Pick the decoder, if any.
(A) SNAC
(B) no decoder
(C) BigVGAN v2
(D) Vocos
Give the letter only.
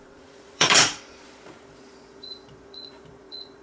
D